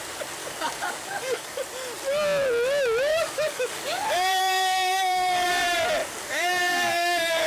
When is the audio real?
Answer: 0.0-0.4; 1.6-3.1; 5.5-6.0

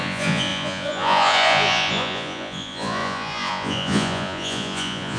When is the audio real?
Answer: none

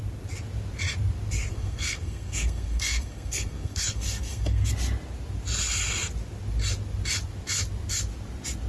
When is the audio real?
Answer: 0.0-1.5; 4.7-8.7

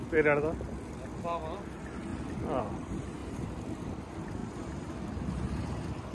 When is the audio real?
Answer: 0.0-2.1; 2.6-3.2; 3.9-6.1